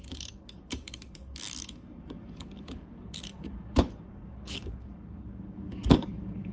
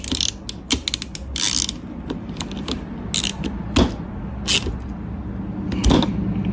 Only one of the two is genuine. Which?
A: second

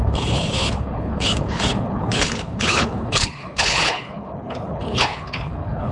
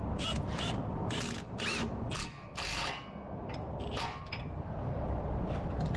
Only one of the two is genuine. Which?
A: second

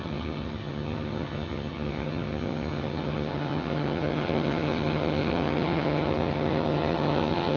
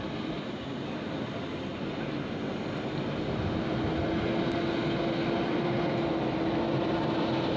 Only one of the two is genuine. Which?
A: second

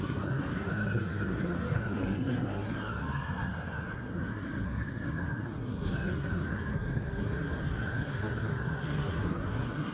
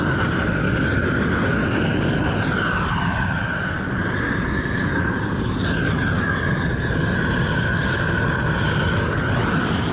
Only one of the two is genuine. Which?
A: second